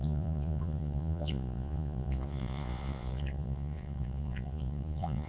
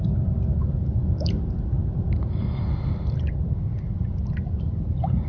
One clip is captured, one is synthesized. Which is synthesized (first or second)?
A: first